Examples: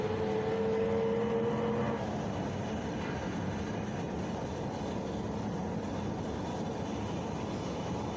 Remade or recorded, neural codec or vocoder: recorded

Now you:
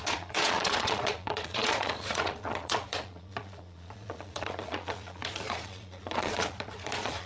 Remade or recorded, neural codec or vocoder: remade, vocoder, Vocos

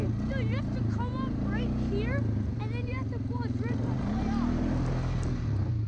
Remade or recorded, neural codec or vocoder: recorded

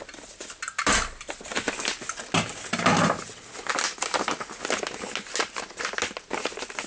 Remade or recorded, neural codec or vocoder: recorded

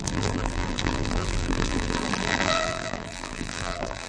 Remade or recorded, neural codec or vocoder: remade, vocoder, BigVGAN v2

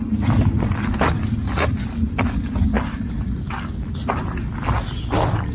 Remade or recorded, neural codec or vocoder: recorded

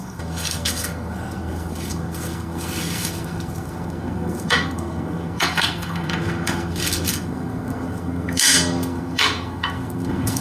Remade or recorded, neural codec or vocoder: remade, codec, SNAC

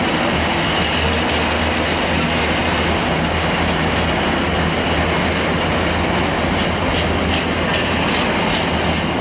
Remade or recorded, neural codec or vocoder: recorded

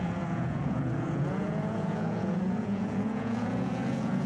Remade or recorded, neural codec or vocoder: remade, vocoder, Vocos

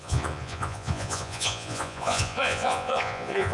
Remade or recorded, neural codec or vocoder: remade, vocoder, Vocos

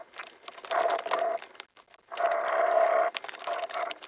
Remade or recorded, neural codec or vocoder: recorded